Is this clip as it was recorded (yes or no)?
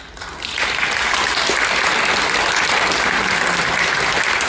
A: yes